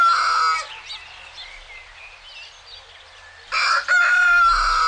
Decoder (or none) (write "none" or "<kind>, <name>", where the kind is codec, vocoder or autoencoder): none